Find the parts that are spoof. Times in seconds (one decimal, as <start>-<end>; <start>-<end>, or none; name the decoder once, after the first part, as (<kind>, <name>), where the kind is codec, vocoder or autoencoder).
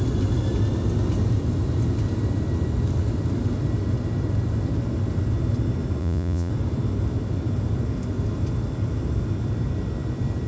6.0-6.5 (vocoder, Vocos)